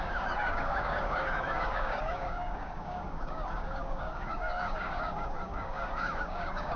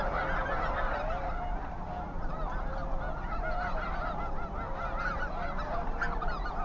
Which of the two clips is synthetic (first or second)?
first